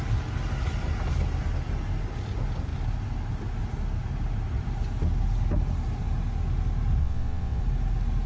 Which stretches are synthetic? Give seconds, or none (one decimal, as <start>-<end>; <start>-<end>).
7.0-7.6